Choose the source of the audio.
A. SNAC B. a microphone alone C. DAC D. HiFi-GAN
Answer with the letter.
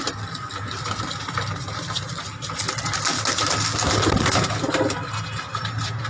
B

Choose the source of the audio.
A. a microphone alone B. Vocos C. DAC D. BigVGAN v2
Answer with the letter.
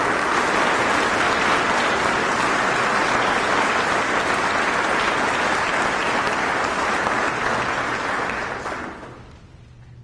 A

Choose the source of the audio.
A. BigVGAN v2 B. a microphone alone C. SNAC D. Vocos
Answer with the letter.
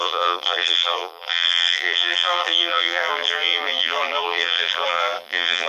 A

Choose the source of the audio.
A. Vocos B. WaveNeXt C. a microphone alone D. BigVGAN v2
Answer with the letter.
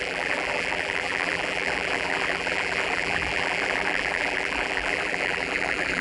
D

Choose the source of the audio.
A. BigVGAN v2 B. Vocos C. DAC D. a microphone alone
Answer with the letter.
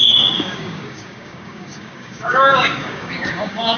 C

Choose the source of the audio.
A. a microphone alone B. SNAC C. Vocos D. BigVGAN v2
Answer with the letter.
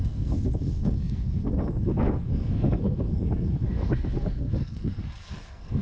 B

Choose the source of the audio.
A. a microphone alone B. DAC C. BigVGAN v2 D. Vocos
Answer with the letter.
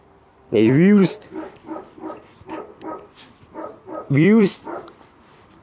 C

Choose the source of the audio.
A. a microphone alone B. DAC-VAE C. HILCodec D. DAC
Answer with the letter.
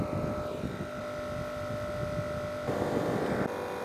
A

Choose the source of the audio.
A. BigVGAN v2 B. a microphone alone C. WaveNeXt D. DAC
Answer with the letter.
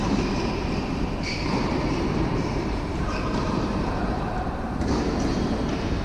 A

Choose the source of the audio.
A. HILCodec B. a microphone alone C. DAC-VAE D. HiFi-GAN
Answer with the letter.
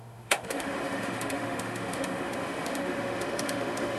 C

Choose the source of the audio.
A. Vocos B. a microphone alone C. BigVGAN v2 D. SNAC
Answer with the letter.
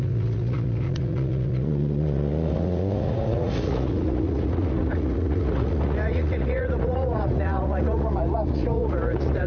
A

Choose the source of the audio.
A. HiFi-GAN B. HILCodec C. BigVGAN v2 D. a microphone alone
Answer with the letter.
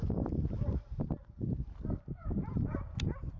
D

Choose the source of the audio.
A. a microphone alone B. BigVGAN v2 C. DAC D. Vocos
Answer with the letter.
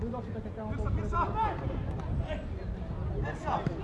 A